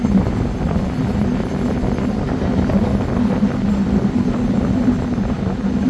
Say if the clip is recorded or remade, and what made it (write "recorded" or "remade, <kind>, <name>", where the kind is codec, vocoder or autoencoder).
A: recorded